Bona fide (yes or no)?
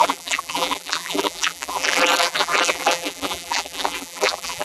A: no